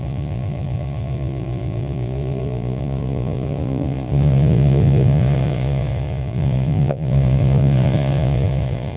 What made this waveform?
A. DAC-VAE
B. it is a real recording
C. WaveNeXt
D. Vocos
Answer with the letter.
D